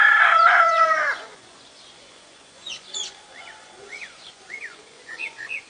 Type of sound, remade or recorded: remade